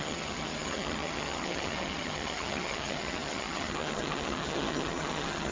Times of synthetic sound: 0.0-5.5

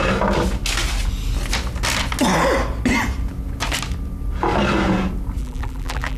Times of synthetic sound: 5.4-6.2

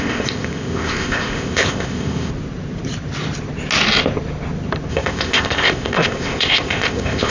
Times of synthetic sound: 0.0-2.3; 4.9-7.3

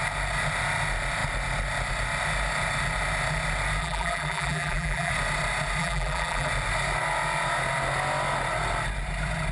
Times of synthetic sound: 3.8-5.1; 5.8-6.5

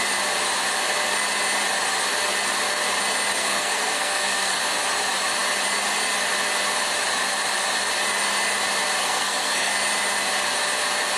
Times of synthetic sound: 3.4-4.6; 9.0-9.7